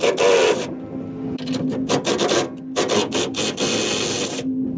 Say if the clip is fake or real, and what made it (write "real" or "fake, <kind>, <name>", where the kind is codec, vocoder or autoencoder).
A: real